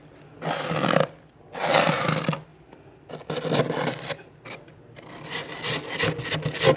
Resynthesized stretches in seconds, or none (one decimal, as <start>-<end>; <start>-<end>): none